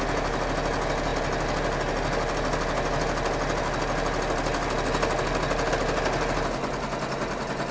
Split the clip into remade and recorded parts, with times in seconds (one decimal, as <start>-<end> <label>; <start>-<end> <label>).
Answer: 0.0-7.7 recorded